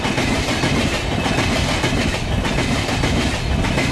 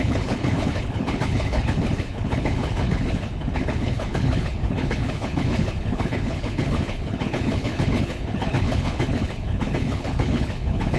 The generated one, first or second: second